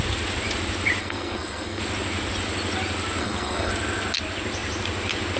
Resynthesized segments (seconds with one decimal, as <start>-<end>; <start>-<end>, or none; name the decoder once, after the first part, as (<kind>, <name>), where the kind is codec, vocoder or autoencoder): 1.0-1.8 (codec, SNAC); 3.2-3.7